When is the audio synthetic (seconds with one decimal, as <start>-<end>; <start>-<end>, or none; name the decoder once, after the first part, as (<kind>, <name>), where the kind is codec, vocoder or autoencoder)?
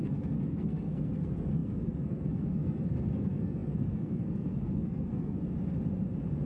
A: 0.0-5.4 (codec, SNAC)